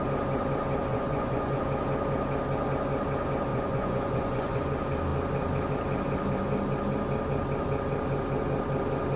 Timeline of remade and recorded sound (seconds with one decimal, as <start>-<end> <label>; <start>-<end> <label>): 0.0-0.9 recorded; 0.9-1.6 remade; 1.6-3.5 recorded; 3.5-4.6 remade; 4.6-9.2 recorded